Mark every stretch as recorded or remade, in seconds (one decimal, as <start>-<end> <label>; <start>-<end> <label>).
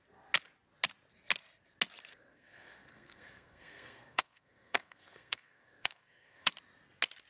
0.0-2.1 recorded; 2.1-6.5 remade; 6.5-7.3 recorded